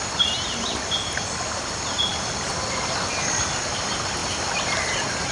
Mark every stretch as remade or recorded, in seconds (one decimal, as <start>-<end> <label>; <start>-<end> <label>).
0.0-5.3 recorded